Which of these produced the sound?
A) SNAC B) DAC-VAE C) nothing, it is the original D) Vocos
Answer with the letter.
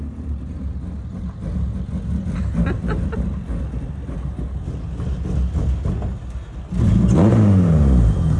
C